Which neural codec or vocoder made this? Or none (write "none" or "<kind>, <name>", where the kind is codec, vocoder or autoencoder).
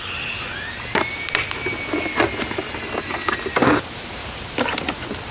none